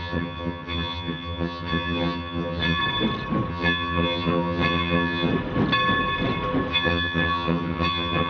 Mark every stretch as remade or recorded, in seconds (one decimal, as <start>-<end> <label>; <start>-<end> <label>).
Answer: 0.0-2.8 remade; 2.8-3.5 recorded; 3.5-5.3 remade; 5.3-6.7 recorded; 6.7-8.3 remade